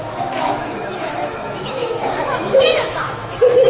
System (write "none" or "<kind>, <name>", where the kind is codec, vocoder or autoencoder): autoencoder, DAC-VAE